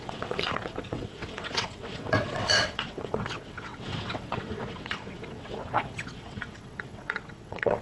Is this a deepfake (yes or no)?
yes